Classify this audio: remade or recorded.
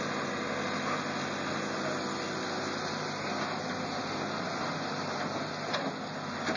recorded